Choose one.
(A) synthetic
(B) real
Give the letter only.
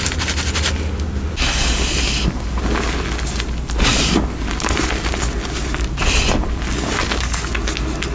B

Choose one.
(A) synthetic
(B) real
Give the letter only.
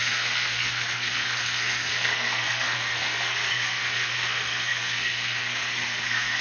A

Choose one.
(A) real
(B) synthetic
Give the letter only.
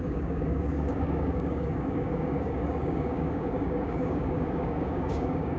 B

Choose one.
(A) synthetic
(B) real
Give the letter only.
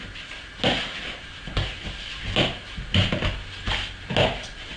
B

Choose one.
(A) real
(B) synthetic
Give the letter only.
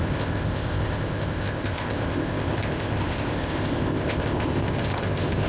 B